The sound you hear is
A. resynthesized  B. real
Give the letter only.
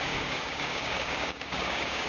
A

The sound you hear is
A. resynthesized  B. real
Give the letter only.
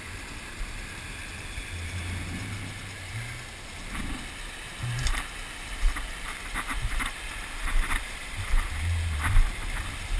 B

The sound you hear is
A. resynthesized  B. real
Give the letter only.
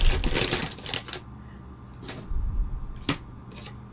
B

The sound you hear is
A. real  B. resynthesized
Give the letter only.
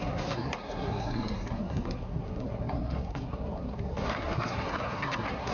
B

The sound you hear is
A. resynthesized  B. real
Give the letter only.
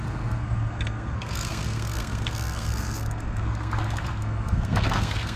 A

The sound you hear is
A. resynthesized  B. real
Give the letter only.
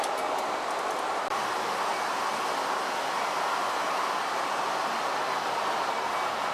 B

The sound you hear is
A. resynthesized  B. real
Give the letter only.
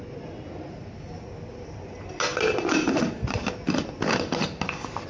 B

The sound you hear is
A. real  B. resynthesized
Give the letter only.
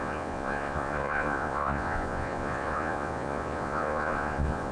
B